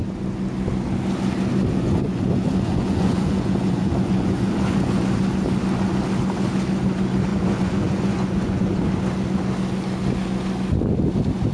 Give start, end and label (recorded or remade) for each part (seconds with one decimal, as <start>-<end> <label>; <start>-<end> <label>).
0.0-1.8 recorded; 1.8-5.0 remade; 5.0-7.3 recorded; 7.3-8.8 remade; 8.8-11.5 recorded